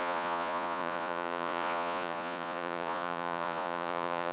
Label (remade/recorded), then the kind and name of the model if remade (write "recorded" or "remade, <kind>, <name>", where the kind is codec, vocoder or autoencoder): remade, vocoder, Vocos